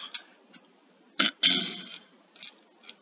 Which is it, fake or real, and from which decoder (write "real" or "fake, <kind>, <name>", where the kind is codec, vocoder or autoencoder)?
real